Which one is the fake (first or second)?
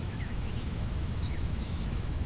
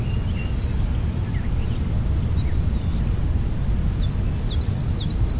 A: first